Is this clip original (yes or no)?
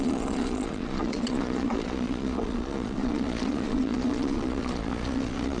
no